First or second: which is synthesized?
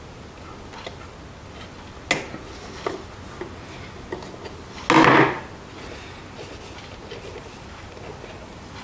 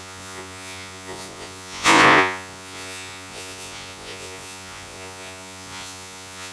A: second